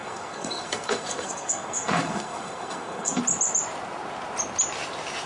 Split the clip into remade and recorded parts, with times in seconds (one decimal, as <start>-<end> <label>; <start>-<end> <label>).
0.0-3.2 remade; 3.2-5.3 recorded